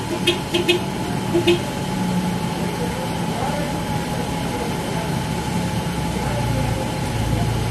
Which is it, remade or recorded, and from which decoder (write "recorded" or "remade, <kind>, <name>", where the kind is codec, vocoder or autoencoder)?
recorded